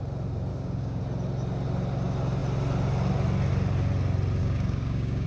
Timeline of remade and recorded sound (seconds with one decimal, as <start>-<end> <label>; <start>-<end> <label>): 0.0-0.5 recorded; 0.5-1.0 remade; 1.0-4.4 recorded; 4.4-5.3 remade